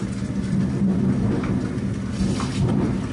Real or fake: real